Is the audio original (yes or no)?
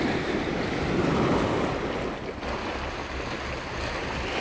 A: yes